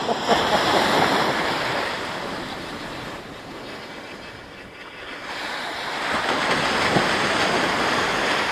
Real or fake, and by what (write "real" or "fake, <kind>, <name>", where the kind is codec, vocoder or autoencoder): real